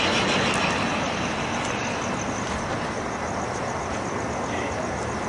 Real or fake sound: real